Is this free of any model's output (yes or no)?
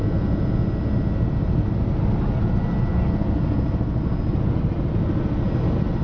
yes